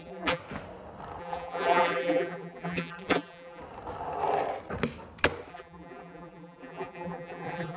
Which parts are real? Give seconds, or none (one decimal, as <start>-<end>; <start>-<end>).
0.4-1.2; 3.6-5.5